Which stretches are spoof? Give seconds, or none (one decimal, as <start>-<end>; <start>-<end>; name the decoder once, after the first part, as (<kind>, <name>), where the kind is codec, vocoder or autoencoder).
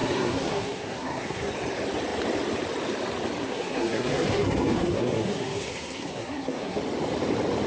0.0-1.5 (codec, SNAC); 3.4-6.8